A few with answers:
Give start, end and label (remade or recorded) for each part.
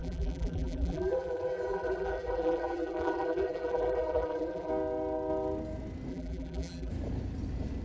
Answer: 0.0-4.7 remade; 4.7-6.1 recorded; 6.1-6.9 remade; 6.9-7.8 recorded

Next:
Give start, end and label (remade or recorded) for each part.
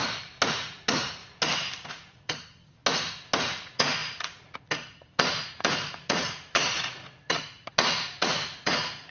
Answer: 0.0-0.5 recorded; 0.5-1.2 remade; 1.2-1.9 recorded; 1.9-2.8 remade; 2.8-3.4 recorded; 3.4-9.1 remade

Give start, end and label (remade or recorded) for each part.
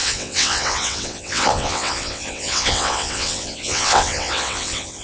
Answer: 0.0-5.0 remade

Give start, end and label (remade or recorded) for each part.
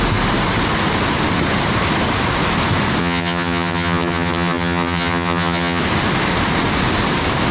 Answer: 0.0-3.0 recorded; 3.0-5.8 remade; 5.8-7.5 recorded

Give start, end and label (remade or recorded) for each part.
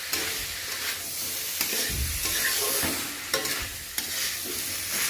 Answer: 0.0-5.1 recorded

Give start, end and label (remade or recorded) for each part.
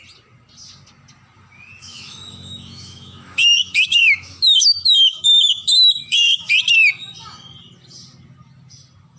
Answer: 0.0-1.8 recorded; 1.8-6.5 remade; 6.5-9.2 recorded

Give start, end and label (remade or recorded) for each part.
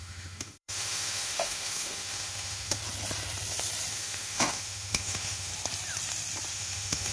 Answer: 0.0-2.8 remade; 2.8-3.9 recorded; 3.9-5.5 remade; 5.5-6.5 recorded; 6.5-7.1 remade